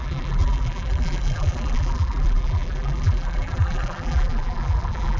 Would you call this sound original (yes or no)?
no